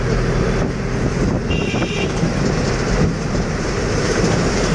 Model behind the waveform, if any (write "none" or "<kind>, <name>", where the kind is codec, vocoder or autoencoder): vocoder, BigVGAN v2